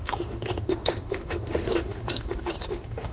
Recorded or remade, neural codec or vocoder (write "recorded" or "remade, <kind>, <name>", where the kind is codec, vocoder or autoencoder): remade, autoencoder, DAC-VAE